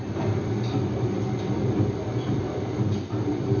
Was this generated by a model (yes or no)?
yes